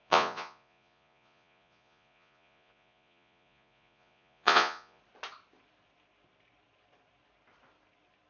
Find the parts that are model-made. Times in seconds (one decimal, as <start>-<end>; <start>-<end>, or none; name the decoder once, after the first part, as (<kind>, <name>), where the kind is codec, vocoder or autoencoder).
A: 0.0-5.0 (vocoder, Vocos)